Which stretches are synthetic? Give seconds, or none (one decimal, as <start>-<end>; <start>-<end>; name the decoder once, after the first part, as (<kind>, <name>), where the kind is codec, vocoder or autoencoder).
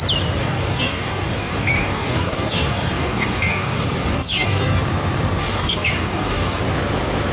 0.4-4.8 (codec, DAC); 5.4-6.6